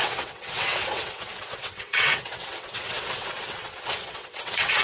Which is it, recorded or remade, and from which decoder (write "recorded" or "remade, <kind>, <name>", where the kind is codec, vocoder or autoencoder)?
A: remade, vocoder, WaveNeXt